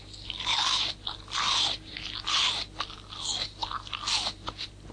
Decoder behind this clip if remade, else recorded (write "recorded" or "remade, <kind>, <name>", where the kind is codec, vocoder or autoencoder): recorded